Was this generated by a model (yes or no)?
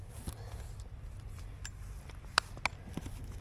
no